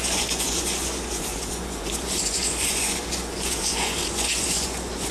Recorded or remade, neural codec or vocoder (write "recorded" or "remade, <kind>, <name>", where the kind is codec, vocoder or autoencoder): remade, vocoder, Vocos